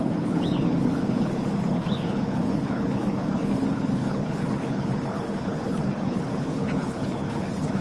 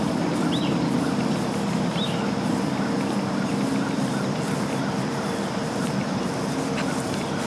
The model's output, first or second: first